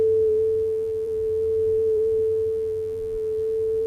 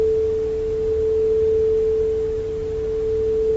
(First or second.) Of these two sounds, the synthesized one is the first